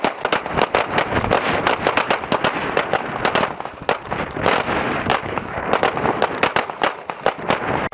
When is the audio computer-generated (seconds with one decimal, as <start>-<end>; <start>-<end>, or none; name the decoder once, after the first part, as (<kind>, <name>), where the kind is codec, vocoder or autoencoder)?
5.1-5.6 (codec, DAC)